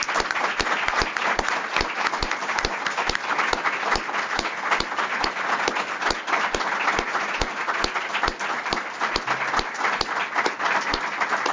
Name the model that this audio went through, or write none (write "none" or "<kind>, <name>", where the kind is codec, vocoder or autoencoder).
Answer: none